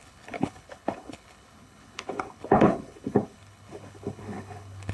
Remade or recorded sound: remade